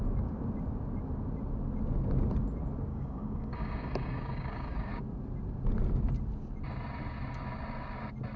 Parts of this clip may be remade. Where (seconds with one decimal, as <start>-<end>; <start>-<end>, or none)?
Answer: 2.9-4.9